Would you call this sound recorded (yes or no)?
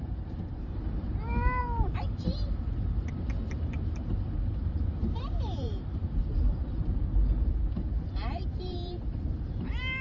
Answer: no